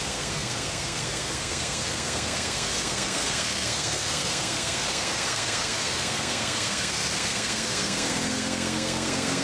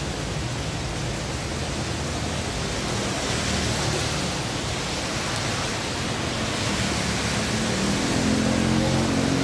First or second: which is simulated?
first